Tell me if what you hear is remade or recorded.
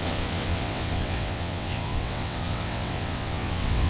remade